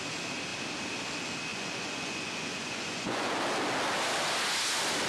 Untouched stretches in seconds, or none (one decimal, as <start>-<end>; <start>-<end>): 0.0-1.5; 3.4-5.1